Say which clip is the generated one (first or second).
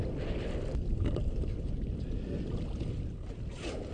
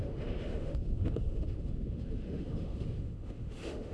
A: second